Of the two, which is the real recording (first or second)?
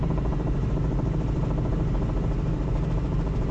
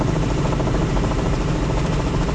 first